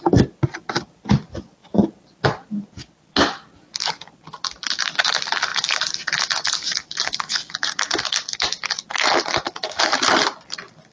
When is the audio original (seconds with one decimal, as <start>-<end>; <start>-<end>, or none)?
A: 0.0-10.9